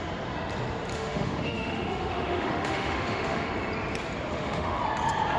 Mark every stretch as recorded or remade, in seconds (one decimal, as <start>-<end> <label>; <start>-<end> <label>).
0.0-0.9 recorded; 0.9-3.5 remade; 3.5-4.3 recorded; 4.3-4.8 remade; 4.8-5.4 recorded